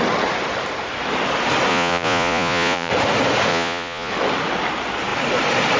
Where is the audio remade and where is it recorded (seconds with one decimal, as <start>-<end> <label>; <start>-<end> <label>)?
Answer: 0.0-1.7 recorded; 1.7-2.9 remade; 2.9-3.5 recorded; 3.5-4.1 remade; 4.1-5.8 recorded